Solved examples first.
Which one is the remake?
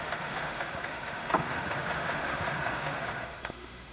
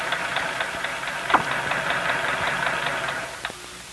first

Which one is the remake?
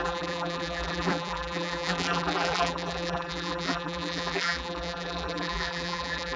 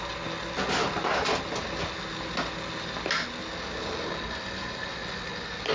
first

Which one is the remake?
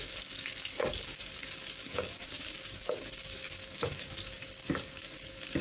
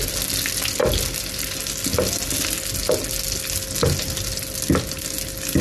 first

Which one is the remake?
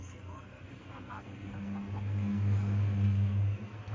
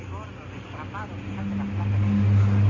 first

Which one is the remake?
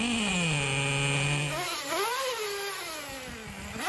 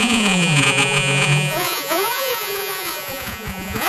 second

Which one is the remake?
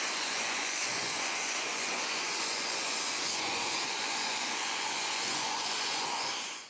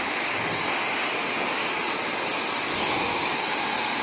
first